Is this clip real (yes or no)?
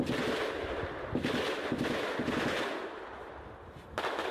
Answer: yes